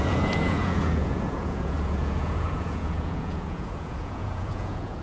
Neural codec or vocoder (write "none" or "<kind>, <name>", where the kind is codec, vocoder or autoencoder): vocoder, Vocos